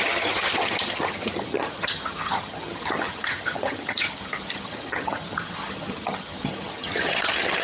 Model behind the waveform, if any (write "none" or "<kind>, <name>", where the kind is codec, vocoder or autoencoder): vocoder, HiFi-GAN